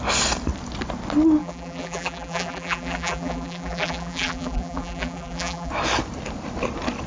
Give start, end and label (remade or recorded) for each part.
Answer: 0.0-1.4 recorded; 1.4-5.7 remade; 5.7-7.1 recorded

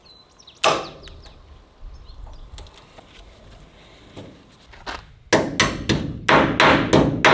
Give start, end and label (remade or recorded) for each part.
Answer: 0.0-7.3 recorded